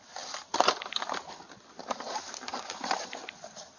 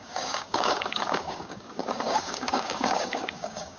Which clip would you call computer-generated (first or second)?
second